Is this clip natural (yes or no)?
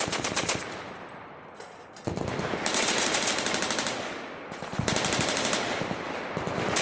yes